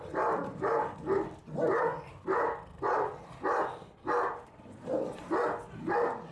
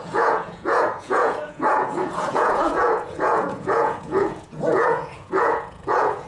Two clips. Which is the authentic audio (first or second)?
first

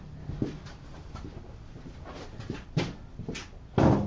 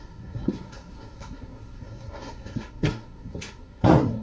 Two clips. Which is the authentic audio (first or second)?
first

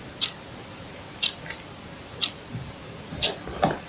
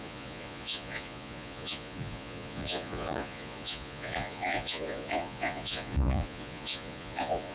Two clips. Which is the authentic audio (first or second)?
first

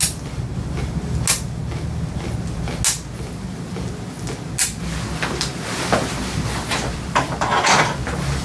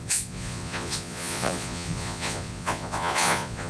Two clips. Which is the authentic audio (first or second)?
first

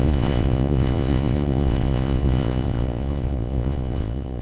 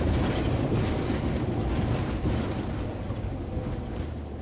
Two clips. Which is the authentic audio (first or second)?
second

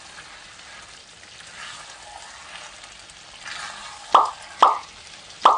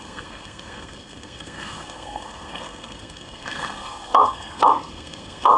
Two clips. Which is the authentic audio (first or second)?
first